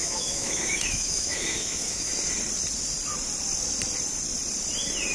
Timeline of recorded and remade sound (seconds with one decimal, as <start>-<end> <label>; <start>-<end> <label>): 0.0-2.1 remade; 2.1-5.1 recorded